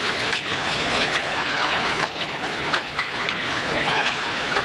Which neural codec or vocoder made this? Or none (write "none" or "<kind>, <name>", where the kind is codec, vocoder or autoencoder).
codec, HILCodec